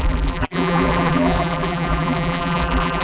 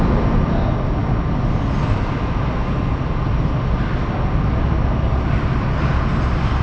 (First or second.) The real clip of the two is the second